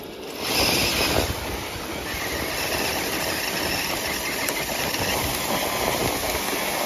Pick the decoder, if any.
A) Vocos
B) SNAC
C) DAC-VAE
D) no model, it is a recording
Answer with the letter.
D